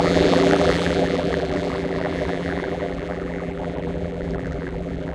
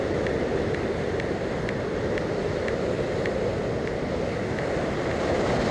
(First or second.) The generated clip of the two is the first